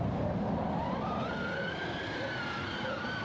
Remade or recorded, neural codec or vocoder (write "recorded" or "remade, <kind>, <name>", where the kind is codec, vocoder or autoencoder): recorded